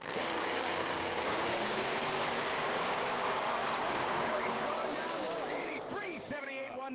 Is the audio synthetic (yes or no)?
yes